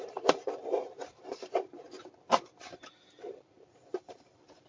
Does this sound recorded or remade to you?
remade